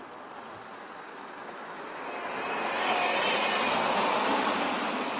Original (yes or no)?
yes